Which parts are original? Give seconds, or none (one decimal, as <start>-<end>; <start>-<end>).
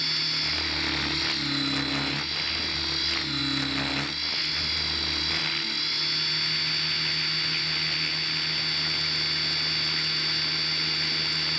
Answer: 0.0-11.6